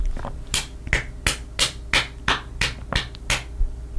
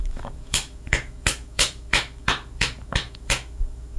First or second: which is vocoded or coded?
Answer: second